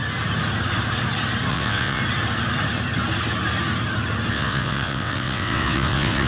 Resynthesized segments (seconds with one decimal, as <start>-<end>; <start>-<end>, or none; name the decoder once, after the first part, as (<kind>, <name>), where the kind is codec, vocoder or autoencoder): 1.5-2.0 (vocoder, WaveNeXt); 4.3-6.3